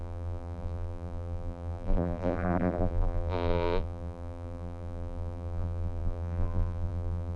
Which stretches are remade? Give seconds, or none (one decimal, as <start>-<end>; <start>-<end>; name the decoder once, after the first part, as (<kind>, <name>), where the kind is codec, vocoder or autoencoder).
0.0-7.4 (vocoder, BigVGAN v2)